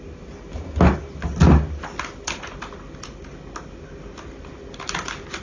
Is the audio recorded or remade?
recorded